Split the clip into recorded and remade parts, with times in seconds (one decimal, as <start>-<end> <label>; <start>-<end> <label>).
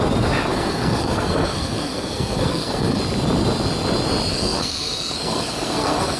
0.0-0.5 recorded; 0.5-3.0 remade; 3.0-4.3 recorded; 4.3-6.2 remade